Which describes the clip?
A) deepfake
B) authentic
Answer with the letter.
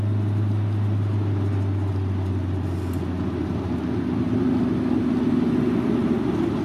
B